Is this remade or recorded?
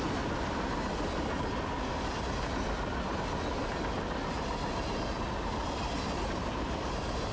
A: recorded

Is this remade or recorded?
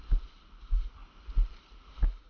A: recorded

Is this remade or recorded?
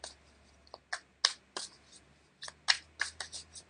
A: recorded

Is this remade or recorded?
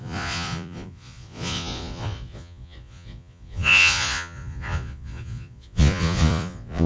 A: remade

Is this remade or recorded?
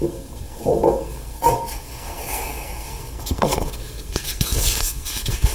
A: remade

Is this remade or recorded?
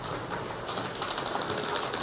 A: recorded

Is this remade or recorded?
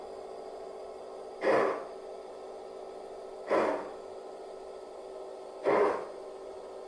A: recorded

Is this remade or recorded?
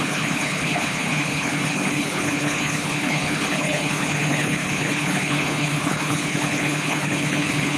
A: remade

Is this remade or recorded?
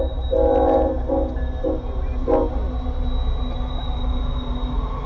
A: recorded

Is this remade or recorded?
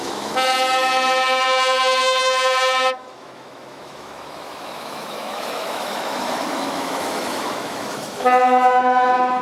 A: remade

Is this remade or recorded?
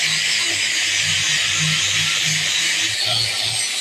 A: recorded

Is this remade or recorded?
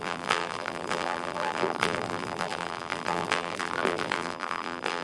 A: remade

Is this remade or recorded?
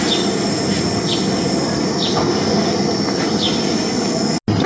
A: recorded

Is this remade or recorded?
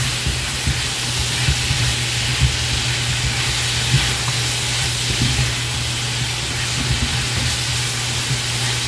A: recorded